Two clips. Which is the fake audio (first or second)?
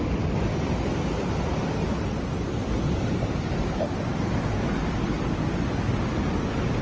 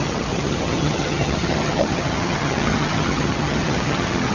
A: second